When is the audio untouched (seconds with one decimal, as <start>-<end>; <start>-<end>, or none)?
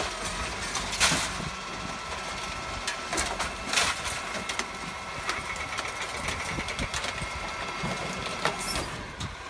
0.0-3.1; 3.7-6.9; 7.5-8.0; 8.8-9.5